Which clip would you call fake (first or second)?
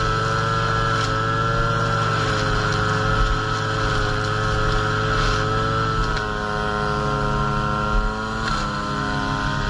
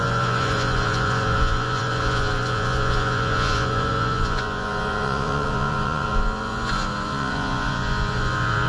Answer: second